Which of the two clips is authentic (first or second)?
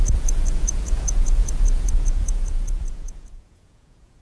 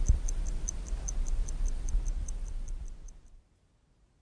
second